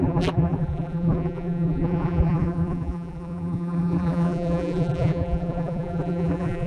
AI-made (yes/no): yes